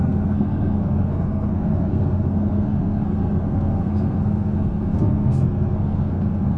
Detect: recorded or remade remade